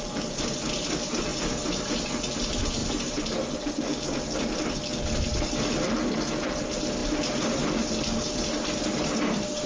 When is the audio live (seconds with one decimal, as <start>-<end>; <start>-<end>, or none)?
0.0-9.7